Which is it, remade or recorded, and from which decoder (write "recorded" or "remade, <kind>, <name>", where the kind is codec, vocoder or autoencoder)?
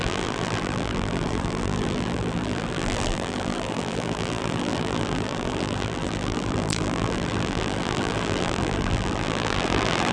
remade, vocoder, BigVGAN v2